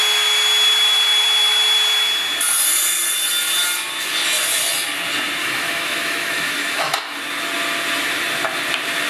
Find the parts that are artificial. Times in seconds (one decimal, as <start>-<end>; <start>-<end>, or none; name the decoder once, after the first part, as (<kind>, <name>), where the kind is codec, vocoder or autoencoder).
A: 5.4-7.2 (autoencoder, DAC-VAE)